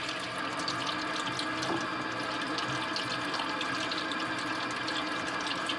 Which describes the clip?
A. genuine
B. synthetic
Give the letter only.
A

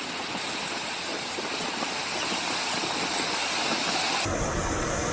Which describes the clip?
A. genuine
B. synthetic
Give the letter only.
A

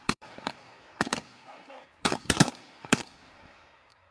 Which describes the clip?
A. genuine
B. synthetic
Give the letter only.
B